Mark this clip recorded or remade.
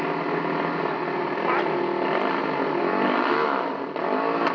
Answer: recorded